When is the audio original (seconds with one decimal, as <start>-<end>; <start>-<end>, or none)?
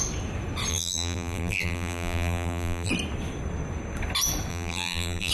0.0-0.7; 2.9-4.5